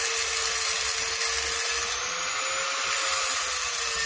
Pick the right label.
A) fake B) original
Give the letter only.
B